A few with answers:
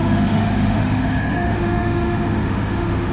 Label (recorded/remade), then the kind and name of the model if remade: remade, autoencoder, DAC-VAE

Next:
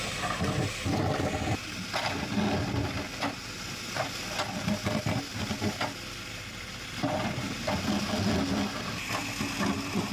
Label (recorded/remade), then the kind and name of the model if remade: recorded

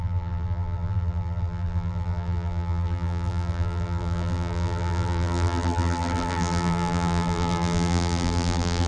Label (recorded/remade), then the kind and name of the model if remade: remade, vocoder, BigVGAN v2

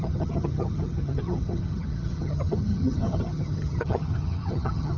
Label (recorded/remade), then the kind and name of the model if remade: remade, vocoder, HiFi-GAN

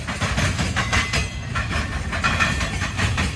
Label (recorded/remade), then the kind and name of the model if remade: recorded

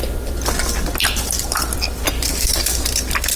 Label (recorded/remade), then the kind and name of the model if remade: remade, vocoder, BigVGAN v2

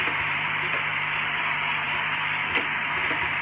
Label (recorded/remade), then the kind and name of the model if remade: remade, vocoder, BigVGAN v2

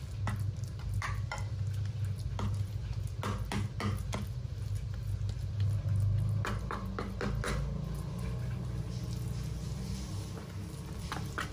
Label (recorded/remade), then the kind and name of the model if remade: recorded